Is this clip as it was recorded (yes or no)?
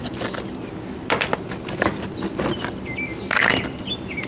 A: yes